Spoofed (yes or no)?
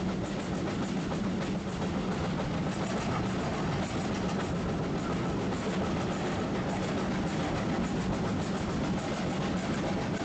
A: no